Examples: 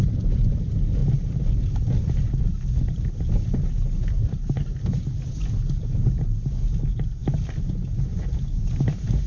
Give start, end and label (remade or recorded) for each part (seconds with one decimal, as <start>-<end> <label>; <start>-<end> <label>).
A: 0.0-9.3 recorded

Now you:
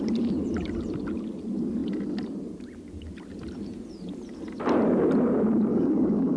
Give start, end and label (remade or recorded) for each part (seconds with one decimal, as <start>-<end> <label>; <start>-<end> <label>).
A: 0.0-5.7 recorded; 5.7-6.4 remade

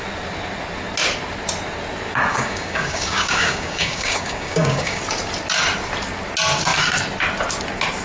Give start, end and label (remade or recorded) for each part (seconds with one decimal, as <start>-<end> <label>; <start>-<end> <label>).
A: 0.0-2.3 recorded; 2.3-5.0 remade; 5.0-8.0 recorded

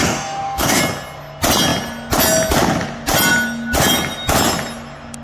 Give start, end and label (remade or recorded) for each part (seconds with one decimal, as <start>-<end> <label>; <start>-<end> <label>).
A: 0.0-0.8 remade; 0.8-5.2 recorded